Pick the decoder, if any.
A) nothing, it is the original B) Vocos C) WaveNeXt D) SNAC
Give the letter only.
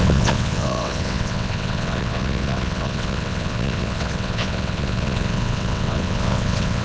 C